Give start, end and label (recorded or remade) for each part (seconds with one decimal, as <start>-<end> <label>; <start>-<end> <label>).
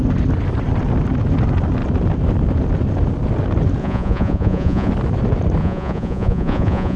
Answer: 0.0-3.8 recorded; 3.8-4.9 remade; 4.9-5.6 recorded; 5.6-7.0 remade